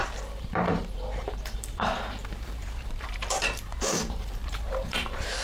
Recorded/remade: remade